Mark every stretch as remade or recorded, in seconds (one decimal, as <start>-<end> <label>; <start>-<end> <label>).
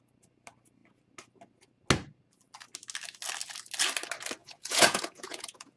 0.0-4.4 recorded; 4.4-5.8 remade